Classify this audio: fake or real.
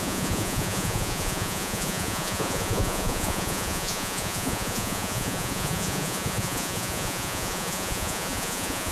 fake